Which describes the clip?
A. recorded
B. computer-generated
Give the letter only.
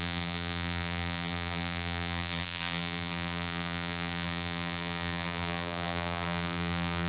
B